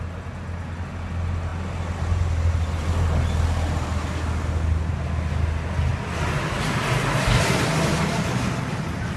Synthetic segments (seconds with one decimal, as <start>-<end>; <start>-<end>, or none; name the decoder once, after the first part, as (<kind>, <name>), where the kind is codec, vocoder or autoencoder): none